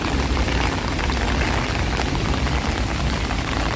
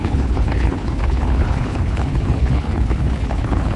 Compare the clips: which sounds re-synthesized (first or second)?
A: second